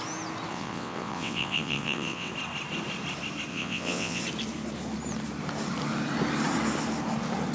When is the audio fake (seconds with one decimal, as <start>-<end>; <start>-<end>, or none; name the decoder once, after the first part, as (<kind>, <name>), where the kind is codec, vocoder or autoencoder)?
0.5-2.3 (vocoder, WaveNeXt); 3.5-4.2